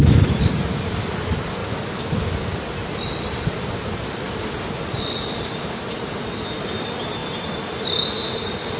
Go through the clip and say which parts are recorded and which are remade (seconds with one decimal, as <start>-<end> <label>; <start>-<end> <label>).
0.0-7.2 recorded; 7.2-8.0 remade; 8.0-8.8 recorded